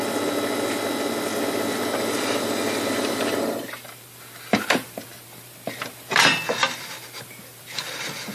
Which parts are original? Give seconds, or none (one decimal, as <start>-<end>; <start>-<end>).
0.0-2.0